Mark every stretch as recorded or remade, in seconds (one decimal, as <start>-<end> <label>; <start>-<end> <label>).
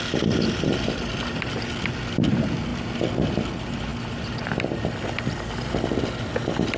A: 0.0-6.8 recorded